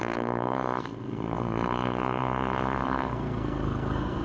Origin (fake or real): fake